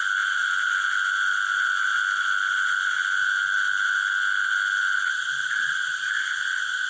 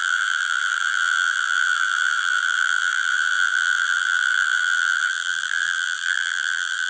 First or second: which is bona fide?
first